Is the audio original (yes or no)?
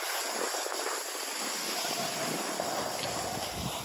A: yes